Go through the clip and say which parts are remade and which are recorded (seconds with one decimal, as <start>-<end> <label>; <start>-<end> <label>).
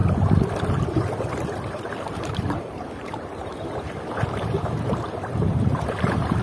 0.0-0.8 recorded; 0.8-3.5 remade; 3.5-4.4 recorded; 4.4-6.4 remade